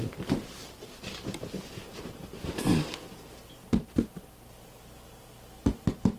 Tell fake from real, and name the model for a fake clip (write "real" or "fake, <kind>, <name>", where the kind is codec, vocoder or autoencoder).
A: real